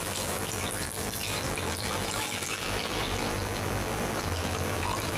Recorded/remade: remade